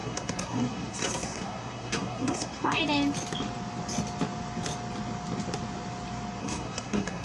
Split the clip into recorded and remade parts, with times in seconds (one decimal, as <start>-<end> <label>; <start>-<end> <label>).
0.0-2.8 remade; 2.8-6.4 recorded; 6.4-7.2 remade